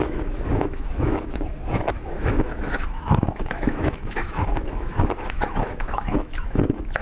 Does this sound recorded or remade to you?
remade